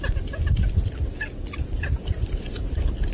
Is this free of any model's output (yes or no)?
yes